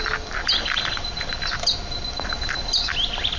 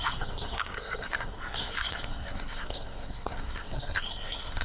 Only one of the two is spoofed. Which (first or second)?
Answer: second